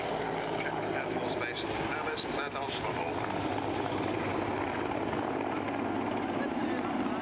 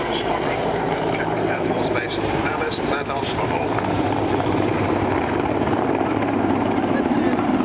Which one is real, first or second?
first